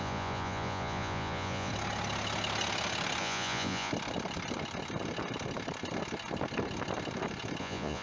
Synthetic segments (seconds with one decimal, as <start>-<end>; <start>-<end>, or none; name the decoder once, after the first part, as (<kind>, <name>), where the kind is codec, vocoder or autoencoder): 0.0-1.7 (vocoder, Vocos); 3.2-3.9; 7.6-8.0